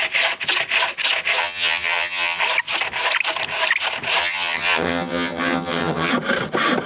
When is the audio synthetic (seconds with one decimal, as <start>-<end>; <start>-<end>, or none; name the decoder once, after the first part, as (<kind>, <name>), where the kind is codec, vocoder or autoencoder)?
1.4-2.4 (vocoder, HiFi-GAN); 4.2-6.1